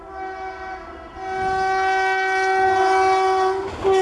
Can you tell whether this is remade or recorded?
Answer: recorded